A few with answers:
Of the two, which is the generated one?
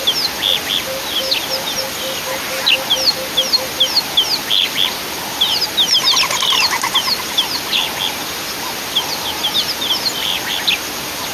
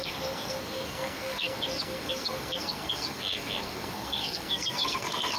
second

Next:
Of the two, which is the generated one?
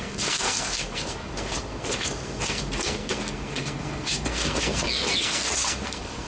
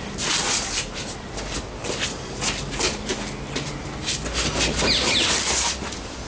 first